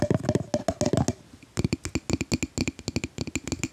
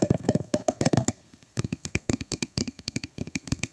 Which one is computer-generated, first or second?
second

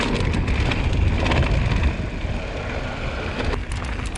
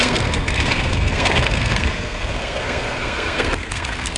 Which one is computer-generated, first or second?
second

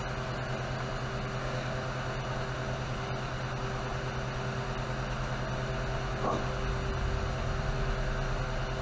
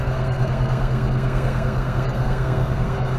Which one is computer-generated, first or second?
second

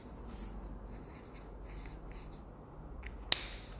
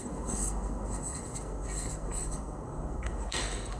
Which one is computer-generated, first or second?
second